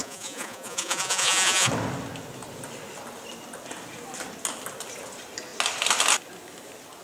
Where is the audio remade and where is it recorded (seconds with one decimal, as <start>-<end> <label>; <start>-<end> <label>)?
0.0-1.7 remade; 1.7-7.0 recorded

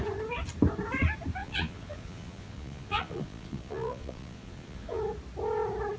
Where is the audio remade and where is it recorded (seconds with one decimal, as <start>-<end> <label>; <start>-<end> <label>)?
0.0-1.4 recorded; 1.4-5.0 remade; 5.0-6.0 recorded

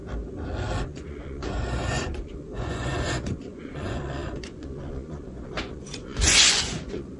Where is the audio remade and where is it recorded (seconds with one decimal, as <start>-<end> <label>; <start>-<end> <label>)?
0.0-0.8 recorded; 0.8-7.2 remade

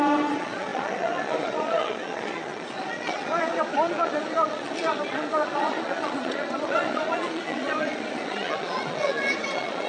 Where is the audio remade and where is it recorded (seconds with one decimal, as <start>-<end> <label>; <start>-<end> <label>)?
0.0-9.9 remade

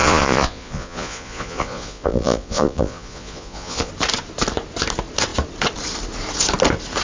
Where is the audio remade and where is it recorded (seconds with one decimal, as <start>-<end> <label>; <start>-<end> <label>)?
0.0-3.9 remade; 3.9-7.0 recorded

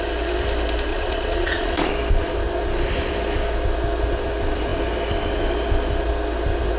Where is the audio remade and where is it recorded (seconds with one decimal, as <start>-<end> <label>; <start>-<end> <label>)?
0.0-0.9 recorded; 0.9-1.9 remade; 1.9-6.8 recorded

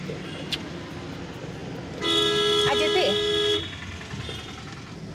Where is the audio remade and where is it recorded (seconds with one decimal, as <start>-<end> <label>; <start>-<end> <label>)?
0.0-5.1 recorded

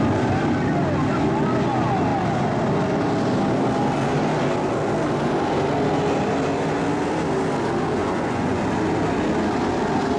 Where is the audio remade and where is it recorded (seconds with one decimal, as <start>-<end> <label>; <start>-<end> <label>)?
0.0-8.0 recorded; 8.0-8.6 remade; 8.6-10.2 recorded